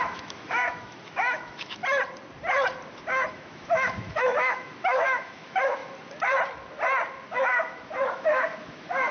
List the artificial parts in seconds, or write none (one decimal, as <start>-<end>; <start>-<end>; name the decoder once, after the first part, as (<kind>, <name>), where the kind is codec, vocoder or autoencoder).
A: 0.0-1.8 (autoencoder, DAC-VAE); 3.3-5.8; 7.3-9.1